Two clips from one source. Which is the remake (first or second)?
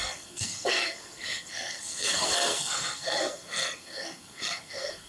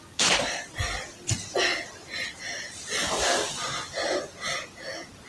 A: first